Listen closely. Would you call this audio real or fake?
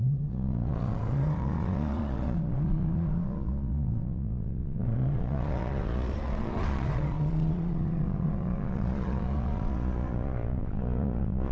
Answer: fake